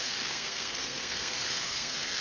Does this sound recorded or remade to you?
remade